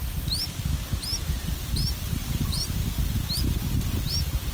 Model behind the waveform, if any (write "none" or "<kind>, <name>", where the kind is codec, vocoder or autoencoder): none